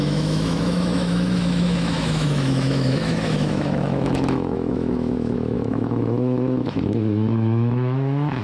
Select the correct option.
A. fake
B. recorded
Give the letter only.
A